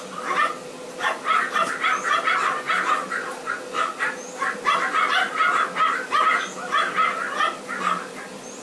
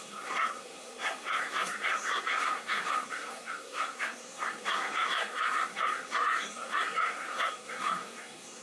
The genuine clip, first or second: first